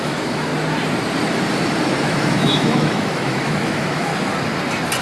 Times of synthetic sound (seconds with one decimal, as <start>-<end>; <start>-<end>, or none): 0.0-0.5; 2.0-4.1